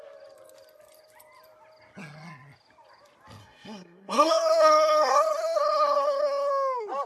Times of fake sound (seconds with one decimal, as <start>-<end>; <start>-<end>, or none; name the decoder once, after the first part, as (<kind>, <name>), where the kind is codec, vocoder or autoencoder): 3.4-6.5 (codec, SNAC)